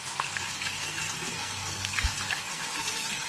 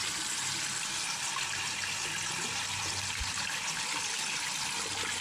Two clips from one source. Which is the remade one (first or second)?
first